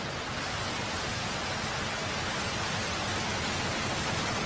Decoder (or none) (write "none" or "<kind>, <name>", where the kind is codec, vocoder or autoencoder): none